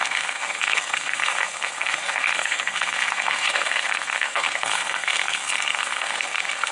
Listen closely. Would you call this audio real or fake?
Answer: fake